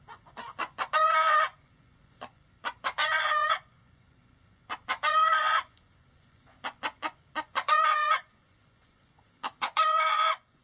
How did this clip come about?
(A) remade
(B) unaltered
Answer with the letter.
A